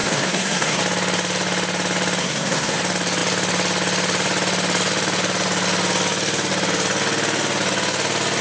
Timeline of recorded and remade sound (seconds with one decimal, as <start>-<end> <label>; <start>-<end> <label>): 0.0-0.8 remade; 0.8-2.2 recorded; 2.2-2.8 remade; 2.8-8.4 recorded